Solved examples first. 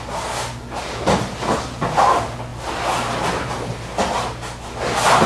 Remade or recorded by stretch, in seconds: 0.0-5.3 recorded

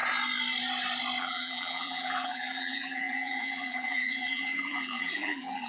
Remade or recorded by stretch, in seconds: 0.0-1.2 recorded; 1.2-5.7 remade

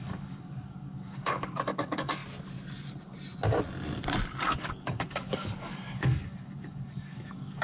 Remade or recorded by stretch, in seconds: 0.0-2.2 remade; 2.2-4.4 recorded; 4.4-7.6 remade

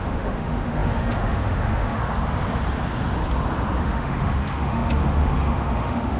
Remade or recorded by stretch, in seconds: 0.0-2.0 remade; 2.0-3.8 recorded; 3.8-6.2 remade